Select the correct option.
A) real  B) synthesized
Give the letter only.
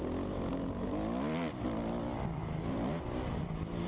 A